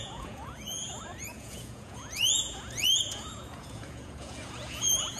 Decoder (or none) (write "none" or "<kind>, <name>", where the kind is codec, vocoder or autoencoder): vocoder, Vocos